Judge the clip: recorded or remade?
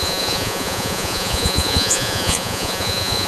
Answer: remade